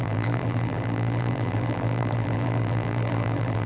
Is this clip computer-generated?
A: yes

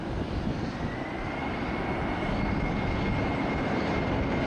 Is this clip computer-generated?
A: no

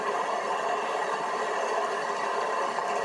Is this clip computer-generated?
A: no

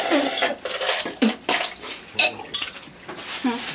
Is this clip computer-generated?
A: yes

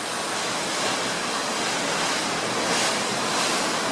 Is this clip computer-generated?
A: no